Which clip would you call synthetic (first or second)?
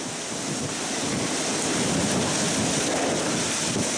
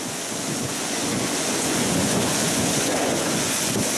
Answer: second